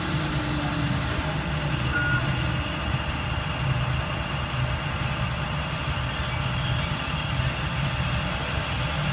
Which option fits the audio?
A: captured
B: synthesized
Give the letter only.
A